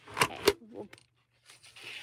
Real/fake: real